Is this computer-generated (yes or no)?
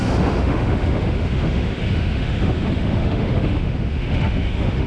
yes